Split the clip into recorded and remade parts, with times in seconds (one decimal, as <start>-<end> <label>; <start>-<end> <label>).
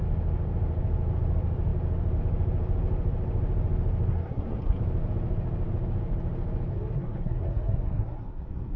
0.0-4.1 recorded; 4.1-4.8 remade; 4.8-6.7 recorded; 6.7-8.8 remade